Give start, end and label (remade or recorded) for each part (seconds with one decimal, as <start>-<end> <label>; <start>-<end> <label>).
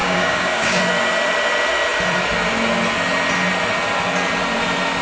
0.0-0.8 remade; 0.8-5.0 recorded